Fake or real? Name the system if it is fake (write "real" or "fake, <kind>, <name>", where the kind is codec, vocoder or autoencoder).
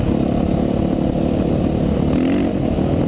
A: real